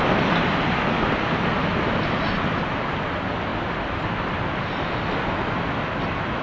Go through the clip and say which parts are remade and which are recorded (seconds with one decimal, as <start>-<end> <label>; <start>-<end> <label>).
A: 0.0-6.4 recorded